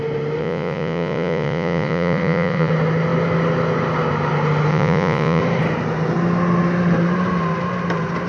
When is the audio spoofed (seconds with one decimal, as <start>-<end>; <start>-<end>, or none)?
0.4-2.7; 4.7-5.4